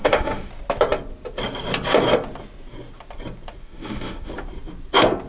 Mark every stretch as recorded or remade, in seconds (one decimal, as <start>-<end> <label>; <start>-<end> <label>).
0.0-0.5 remade; 0.5-3.6 recorded; 3.6-4.3 remade; 4.3-5.3 recorded